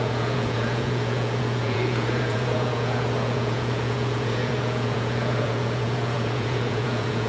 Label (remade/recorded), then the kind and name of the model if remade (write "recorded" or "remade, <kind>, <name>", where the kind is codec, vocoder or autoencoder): remade, vocoder, Vocos